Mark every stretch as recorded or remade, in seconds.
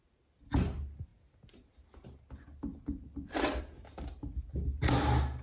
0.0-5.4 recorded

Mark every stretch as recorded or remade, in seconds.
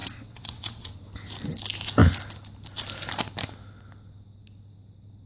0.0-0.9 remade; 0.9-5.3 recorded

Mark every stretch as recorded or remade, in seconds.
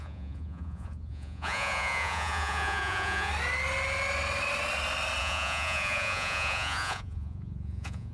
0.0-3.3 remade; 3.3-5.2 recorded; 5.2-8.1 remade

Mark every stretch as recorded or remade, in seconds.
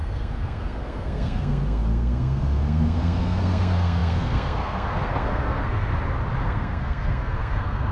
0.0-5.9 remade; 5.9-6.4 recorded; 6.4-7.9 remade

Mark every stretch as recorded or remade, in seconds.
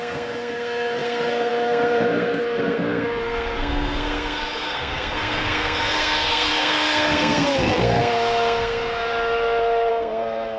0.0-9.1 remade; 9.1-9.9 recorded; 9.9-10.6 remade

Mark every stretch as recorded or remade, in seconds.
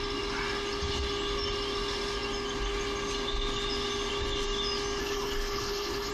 0.0-5.0 recorded; 5.0-6.1 remade